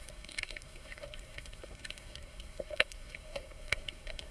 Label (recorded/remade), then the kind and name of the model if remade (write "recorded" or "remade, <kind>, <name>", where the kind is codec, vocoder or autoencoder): remade, codec, SNAC